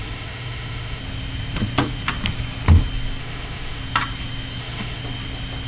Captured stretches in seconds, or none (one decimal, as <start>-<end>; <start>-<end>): 1.0-3.2; 3.8-4.6; 5.0-5.7